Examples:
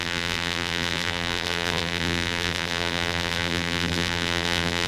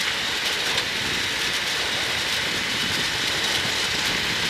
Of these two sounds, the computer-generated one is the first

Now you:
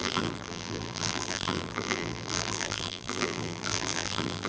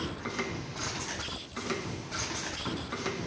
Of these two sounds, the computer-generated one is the first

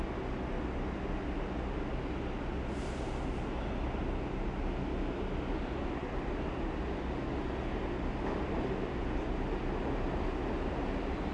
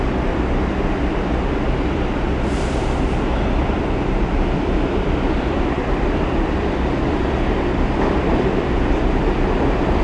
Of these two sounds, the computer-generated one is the second